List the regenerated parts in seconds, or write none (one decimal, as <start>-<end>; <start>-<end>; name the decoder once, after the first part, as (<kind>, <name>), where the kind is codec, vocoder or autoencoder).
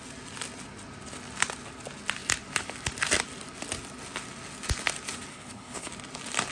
5.3-5.9 (codec, HILCodec)